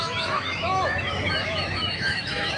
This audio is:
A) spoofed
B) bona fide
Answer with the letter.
A